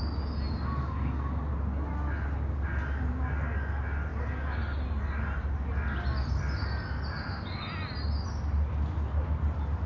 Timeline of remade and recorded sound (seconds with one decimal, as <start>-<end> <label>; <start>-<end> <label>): 0.0-0.8 recorded; 0.8-1.3 remade; 1.3-9.9 recorded